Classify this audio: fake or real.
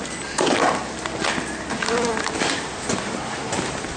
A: real